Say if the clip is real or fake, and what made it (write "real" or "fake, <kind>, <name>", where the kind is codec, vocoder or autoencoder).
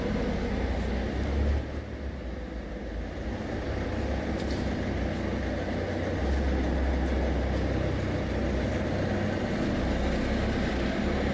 real